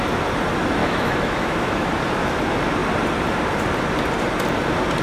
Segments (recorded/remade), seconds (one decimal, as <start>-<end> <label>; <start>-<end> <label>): 0.0-0.8 recorded; 0.8-1.9 remade; 1.9-5.0 recorded